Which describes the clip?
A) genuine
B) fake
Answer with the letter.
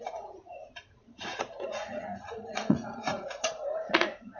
B